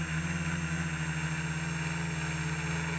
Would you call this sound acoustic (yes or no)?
yes